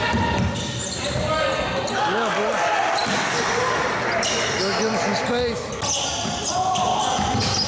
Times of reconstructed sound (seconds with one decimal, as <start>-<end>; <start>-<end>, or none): none